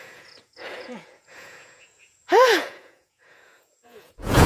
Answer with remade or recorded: remade